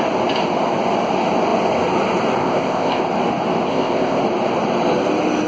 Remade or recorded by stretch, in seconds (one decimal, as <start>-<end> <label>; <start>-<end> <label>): 0.0-2.4 recorded; 2.4-3.0 remade; 3.0-3.7 recorded; 3.7-4.2 remade; 4.2-5.5 recorded